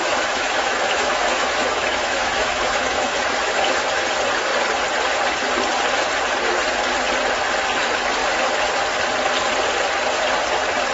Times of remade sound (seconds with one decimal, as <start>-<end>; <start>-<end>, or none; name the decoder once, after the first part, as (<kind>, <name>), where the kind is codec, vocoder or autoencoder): 0.0-4.0 (autoencoder, DAC-VAE)